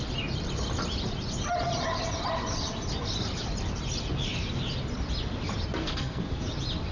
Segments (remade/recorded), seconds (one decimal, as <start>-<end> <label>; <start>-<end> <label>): 0.0-5.8 recorded; 5.8-6.4 remade; 6.4-6.9 recorded